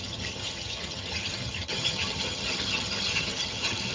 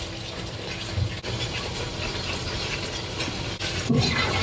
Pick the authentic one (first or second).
second